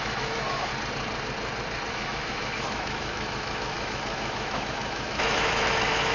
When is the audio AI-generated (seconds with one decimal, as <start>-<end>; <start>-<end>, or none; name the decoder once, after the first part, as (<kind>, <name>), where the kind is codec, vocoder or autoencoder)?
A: 0.0-0.7 (autoencoder, DAC-VAE); 1.9-6.1